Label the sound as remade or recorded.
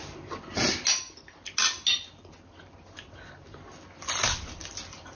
recorded